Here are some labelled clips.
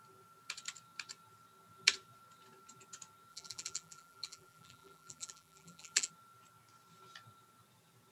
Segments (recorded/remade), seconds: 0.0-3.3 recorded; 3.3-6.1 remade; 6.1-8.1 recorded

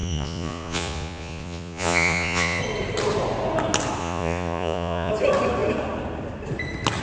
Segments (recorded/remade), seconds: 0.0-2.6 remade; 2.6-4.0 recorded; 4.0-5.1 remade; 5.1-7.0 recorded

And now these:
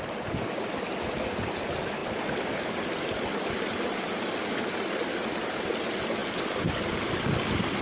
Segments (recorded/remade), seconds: 0.0-7.8 recorded

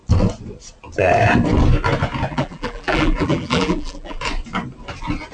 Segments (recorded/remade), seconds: 0.0-2.3 recorded; 2.3-4.2 remade; 4.2-5.3 recorded

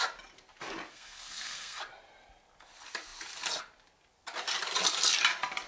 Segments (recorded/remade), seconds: 0.0-0.9 recorded; 0.9-1.8 remade; 1.8-5.7 recorded

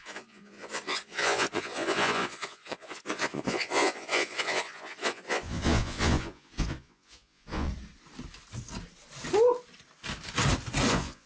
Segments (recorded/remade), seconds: 0.0-7.7 remade; 7.7-10.9 recorded; 10.9-11.3 remade